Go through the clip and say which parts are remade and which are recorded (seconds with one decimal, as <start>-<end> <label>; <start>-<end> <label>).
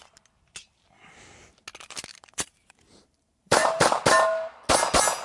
0.0-2.1 recorded; 2.1-3.9 remade; 3.9-5.2 recorded